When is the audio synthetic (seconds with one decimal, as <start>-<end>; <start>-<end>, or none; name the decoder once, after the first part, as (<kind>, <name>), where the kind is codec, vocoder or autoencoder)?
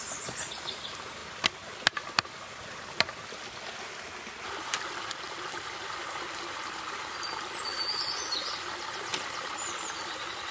none